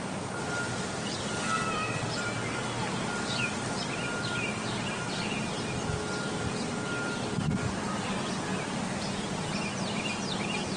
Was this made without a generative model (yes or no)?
yes